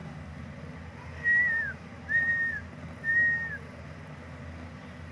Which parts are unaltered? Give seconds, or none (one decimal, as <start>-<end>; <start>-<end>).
0.0-5.1